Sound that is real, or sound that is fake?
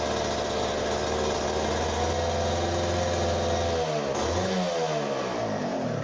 real